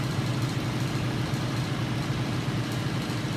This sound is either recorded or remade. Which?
recorded